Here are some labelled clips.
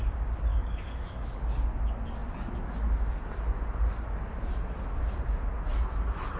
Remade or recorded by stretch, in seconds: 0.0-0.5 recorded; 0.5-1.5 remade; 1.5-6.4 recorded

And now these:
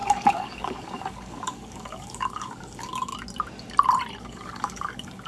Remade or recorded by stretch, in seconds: 0.0-3.1 remade; 3.1-4.2 recorded; 4.2-5.3 remade